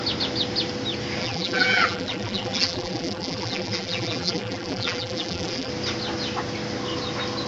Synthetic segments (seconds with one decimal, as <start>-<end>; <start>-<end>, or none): 1.2-5.7